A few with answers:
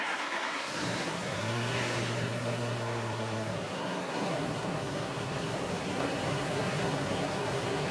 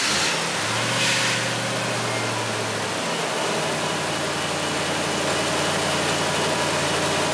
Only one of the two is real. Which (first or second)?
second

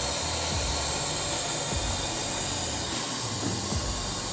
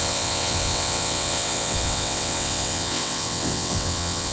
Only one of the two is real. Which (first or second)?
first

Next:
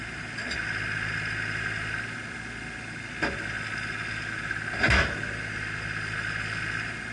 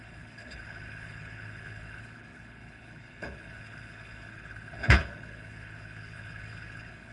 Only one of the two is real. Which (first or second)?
first